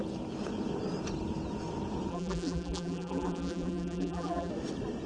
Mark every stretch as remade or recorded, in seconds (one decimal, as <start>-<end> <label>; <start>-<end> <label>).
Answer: 0.0-2.1 recorded; 2.1-4.5 remade; 4.5-5.1 recorded